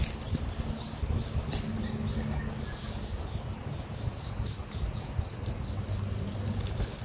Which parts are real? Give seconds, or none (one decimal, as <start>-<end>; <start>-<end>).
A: 0.0-7.0